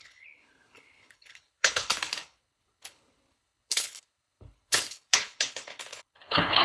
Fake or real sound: fake